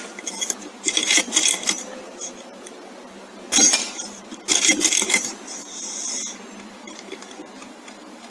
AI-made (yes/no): yes